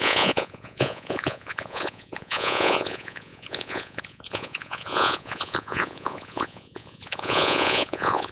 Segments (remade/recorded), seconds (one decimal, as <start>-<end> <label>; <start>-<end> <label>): 0.0-8.3 remade